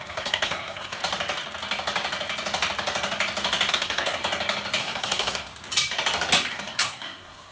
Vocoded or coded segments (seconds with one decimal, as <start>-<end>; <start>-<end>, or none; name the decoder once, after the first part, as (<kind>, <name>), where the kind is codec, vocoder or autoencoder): 0.0-1.0 (codec, SNAC); 3.7-4.2; 4.8-5.5; 6.5-7.5